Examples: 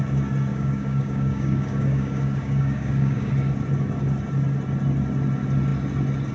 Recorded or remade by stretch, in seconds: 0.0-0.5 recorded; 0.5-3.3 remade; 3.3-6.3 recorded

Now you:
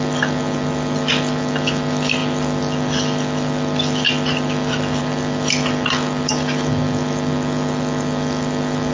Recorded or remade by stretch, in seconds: 0.0-8.9 recorded

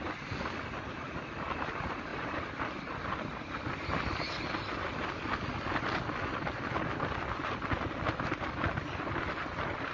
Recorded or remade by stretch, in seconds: 0.0-2.1 recorded; 2.1-2.6 remade; 2.6-9.9 recorded

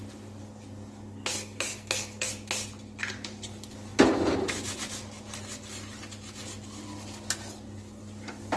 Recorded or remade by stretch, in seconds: 0.0-1.3 recorded; 1.3-2.3 remade; 2.3-8.6 recorded